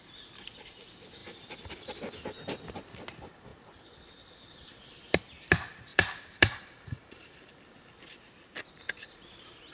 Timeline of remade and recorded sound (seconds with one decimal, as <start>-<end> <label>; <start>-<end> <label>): 0.0-1.2 recorded; 1.2-2.0 remade; 2.0-5.9 recorded; 5.9-7.5 remade; 7.5-9.7 recorded